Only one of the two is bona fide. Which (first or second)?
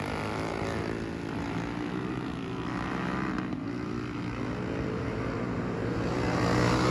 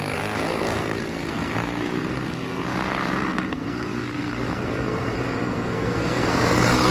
first